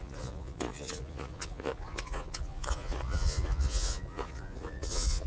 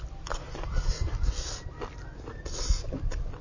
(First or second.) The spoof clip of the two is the first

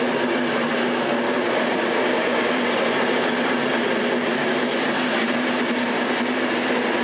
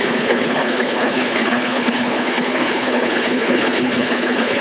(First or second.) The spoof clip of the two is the second